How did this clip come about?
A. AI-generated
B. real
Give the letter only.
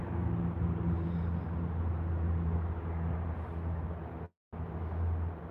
B